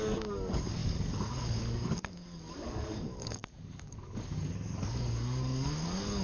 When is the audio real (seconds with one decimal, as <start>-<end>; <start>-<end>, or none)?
none